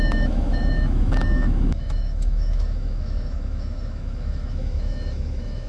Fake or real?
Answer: fake